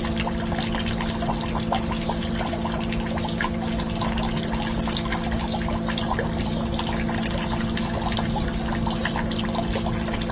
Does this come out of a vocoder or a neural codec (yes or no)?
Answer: no